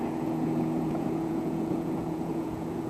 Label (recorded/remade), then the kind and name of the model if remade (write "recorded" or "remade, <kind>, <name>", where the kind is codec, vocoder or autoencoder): remade, vocoder, Vocos